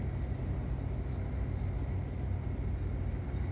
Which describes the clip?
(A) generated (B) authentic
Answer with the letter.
B